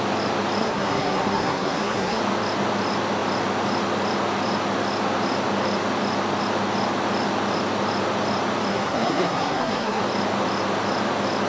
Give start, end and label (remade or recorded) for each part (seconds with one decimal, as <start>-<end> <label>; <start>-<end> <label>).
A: 0.0-0.6 recorded; 0.6-2.2 remade; 2.2-8.7 recorded; 8.7-10.0 remade; 10.0-11.5 recorded